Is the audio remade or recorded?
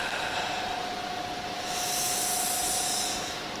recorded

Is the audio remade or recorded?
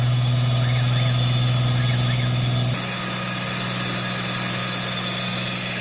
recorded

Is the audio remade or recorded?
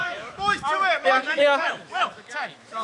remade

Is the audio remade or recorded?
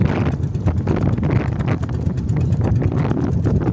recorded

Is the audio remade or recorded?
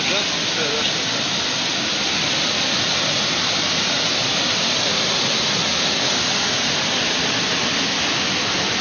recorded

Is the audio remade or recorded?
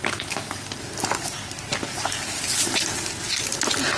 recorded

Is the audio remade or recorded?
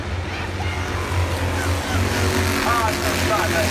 recorded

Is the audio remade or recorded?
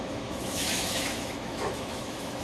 remade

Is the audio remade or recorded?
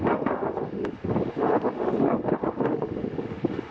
remade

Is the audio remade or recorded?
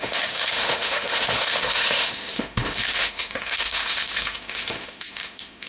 remade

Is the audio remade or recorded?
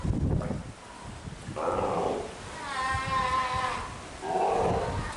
recorded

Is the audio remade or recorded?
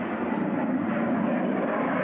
recorded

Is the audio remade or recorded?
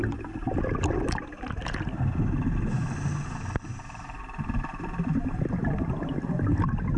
recorded